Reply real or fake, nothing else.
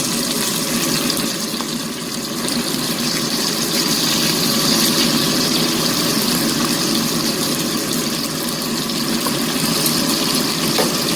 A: real